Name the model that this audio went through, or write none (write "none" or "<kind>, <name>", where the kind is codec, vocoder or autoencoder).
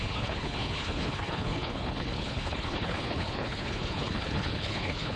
codec, HILCodec